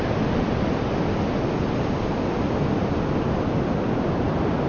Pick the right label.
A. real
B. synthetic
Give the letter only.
A